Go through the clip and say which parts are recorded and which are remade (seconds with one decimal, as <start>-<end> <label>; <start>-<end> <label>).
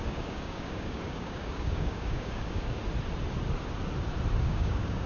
0.0-2.8 remade; 2.8-4.4 recorded; 4.4-5.1 remade